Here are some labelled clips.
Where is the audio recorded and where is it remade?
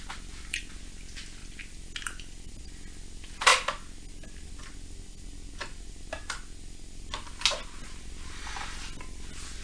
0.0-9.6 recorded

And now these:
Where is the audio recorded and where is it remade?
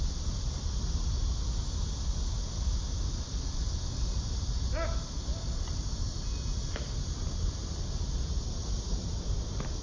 0.0-9.8 recorded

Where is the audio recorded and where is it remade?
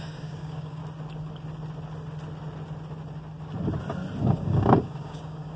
0.0-0.8 remade; 0.8-4.2 recorded; 4.2-5.6 remade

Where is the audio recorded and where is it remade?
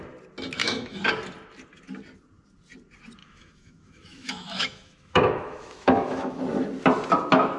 0.0-0.6 recorded; 0.6-1.1 remade; 1.1-3.2 recorded; 3.2-6.4 remade; 6.4-7.6 recorded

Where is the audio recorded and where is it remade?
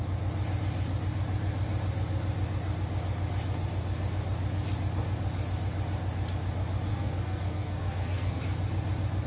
0.0-6.9 recorded; 6.9-8.4 remade; 8.4-9.3 recorded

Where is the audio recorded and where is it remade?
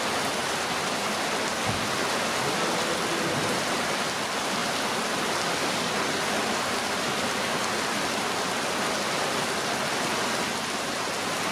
0.0-0.4 recorded; 0.4-1.4 remade; 1.4-11.5 recorded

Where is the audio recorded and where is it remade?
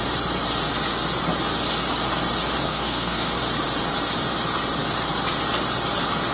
0.0-2.7 recorded; 2.7-3.3 remade; 3.3-6.3 recorded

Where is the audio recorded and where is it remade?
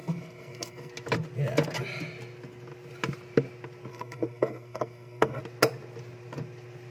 0.0-0.9 remade; 0.9-3.9 recorded; 3.9-5.4 remade; 5.4-6.9 recorded